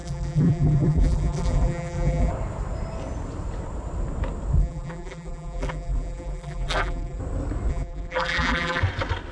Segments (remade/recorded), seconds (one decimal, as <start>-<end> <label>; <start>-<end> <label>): 0.0-2.3 remade; 2.3-4.6 recorded; 4.6-7.2 remade; 7.2-7.7 recorded; 7.7-8.8 remade; 8.8-9.3 recorded